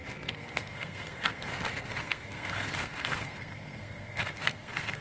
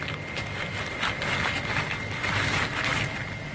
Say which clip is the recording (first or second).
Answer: second